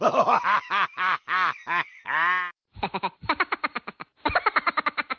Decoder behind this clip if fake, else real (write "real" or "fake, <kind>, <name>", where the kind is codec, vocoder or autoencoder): real